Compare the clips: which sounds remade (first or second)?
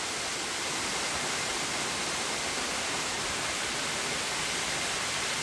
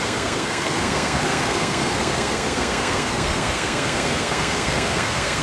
second